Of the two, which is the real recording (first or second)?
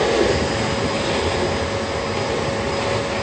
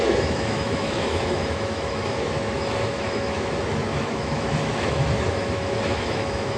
first